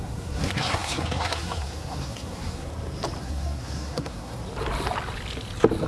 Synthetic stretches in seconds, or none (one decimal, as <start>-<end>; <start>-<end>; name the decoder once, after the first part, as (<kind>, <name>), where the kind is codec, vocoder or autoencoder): 0.0-2.7 (codec, SNAC); 3.2-4.4